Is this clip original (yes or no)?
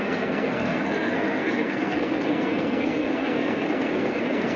no